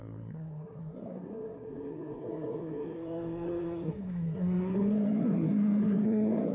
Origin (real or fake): fake